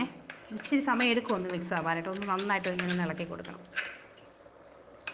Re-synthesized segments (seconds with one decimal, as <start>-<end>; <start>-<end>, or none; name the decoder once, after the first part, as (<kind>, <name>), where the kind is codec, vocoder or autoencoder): 0.4-3.5 (autoencoder, DAC-VAE)